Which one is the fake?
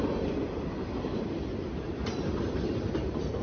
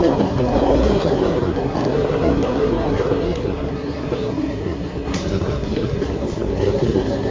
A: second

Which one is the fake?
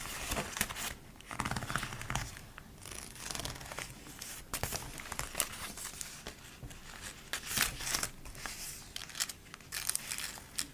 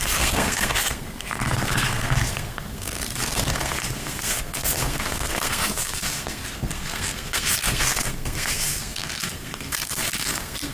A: second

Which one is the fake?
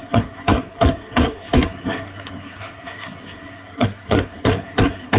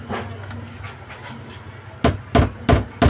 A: first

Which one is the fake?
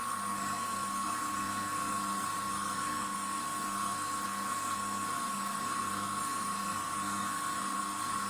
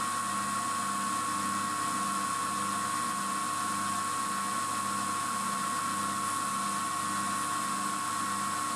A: first